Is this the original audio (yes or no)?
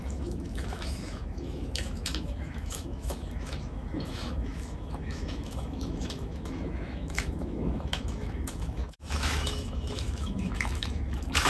no